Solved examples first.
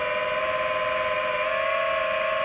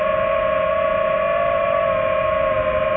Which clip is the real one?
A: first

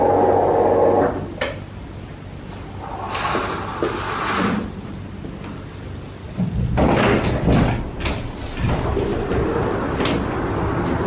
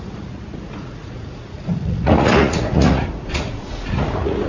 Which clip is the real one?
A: first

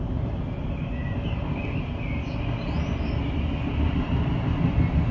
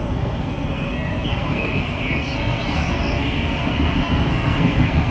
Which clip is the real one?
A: first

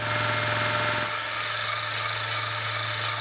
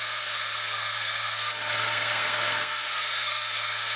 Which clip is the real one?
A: first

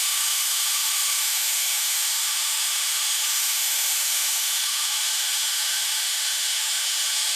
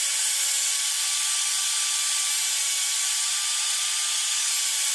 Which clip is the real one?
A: second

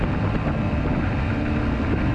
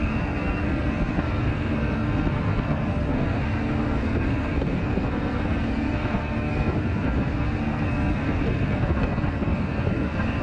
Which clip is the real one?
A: first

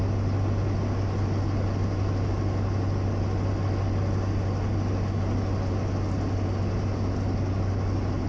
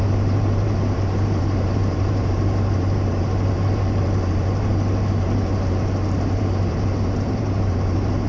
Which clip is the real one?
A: first